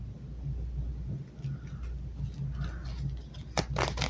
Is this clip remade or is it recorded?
recorded